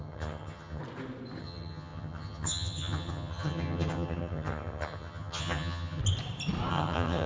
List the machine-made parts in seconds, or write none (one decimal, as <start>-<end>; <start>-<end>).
0.0-0.8; 1.4-6.0; 6.7-7.3

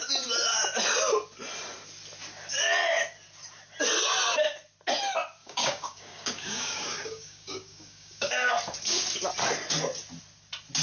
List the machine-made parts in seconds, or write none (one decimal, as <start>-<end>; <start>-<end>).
5.4-8.5